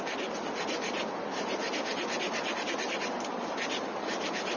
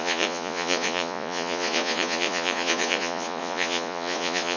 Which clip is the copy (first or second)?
second